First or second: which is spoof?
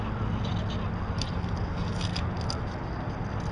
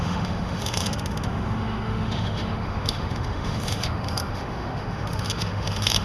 second